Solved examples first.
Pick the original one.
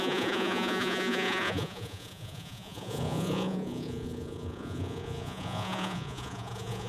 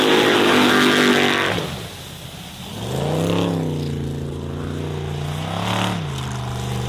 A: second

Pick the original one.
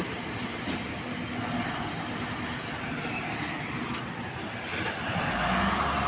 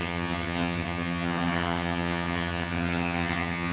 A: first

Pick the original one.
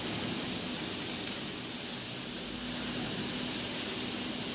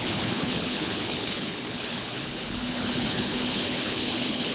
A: first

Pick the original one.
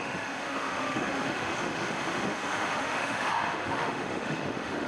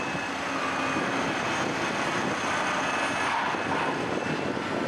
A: second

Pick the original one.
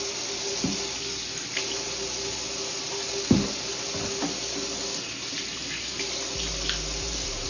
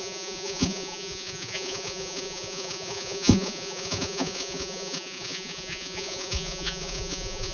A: first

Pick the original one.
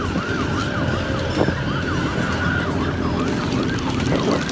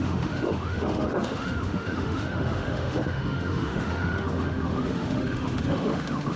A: first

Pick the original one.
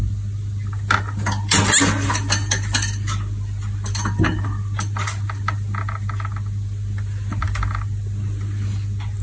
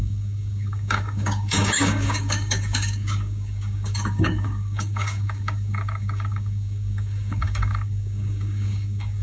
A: first